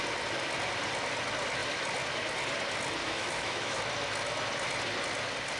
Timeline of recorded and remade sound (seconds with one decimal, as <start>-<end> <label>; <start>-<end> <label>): 0.0-3.0 recorded; 3.0-3.8 remade; 3.8-5.6 recorded